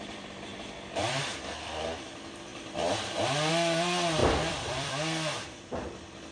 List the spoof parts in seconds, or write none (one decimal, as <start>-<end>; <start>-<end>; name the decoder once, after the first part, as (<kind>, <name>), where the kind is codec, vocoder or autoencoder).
0.5-1.2 (vocoder, BigVGAN v2); 2.5-3.5; 4.2-4.9